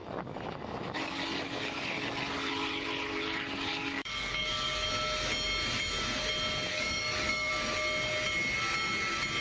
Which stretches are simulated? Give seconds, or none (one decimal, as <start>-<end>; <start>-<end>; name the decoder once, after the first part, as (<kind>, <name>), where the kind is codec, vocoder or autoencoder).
0.0-2.5 (codec, DAC); 3.7-4.9; 6.7-7.5